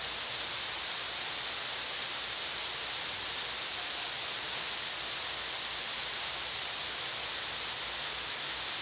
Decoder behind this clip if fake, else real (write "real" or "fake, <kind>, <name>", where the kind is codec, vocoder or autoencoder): real